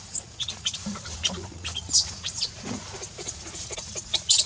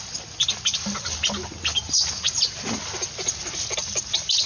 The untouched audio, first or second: second